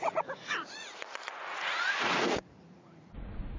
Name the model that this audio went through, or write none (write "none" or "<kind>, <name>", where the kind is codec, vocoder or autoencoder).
vocoder, Vocos